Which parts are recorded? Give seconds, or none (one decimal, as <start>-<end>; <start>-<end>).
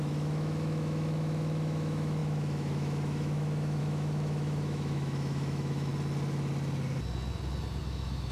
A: 5.9-7.8